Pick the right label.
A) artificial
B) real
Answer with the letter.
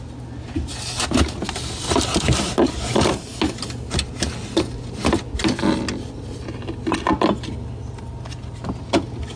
B